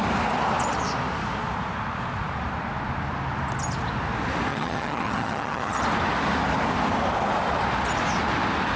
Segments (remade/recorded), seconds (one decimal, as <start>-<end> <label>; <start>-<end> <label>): 0.0-4.5 recorded; 4.5-5.8 remade; 5.8-8.8 recorded